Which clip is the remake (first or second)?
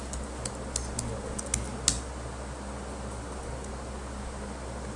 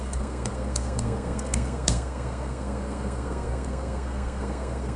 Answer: second